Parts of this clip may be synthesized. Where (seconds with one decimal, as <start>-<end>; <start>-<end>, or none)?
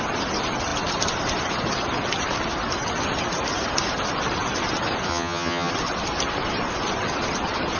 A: 5.1-5.7